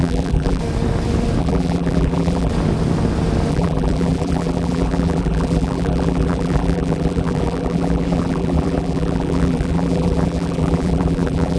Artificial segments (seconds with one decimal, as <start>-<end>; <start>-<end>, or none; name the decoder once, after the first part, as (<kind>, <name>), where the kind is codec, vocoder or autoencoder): 0.0-0.6 (vocoder, BigVGAN v2); 1.4-2.5; 3.5-11.6